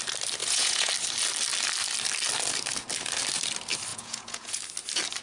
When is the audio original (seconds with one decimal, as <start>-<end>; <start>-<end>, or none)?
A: 0.0-0.4; 0.9-3.9; 4.6-5.2